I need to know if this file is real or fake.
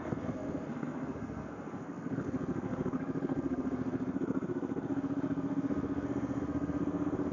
fake